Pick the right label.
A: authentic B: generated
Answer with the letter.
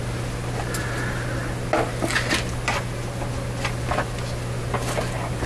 A